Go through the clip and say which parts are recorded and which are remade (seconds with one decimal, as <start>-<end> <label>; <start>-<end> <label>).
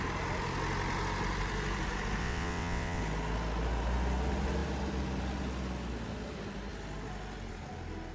0.0-2.2 recorded; 2.2-3.0 remade; 3.0-8.1 recorded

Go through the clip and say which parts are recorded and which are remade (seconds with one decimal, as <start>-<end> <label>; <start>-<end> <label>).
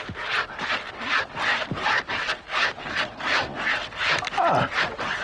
0.0-5.2 recorded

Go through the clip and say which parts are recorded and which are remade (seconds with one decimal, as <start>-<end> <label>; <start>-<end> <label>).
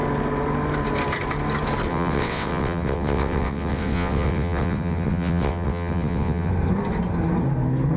0.0-1.9 recorded; 1.9-6.5 remade; 6.5-8.0 recorded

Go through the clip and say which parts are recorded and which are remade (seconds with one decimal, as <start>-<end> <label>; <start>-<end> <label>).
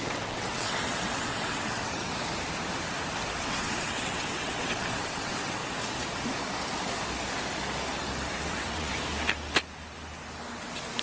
0.0-2.1 remade; 2.1-3.4 recorded; 3.4-5.6 remade; 5.6-8.3 recorded; 8.3-8.9 remade; 8.9-11.0 recorded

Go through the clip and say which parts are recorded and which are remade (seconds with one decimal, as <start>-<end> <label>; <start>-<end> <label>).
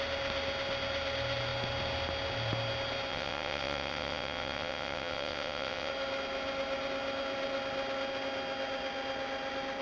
0.0-3.1 recorded; 3.1-5.9 remade; 5.9-9.8 recorded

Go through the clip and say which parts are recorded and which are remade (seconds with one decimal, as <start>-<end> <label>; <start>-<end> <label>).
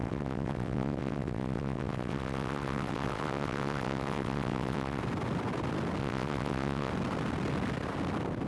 0.0-5.0 remade; 5.0-6.0 recorded; 6.0-6.9 remade; 6.9-8.5 recorded